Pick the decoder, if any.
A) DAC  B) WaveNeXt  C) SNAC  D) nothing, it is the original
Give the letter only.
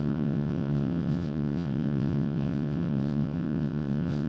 B